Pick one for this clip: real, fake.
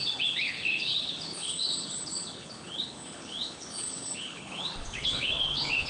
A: fake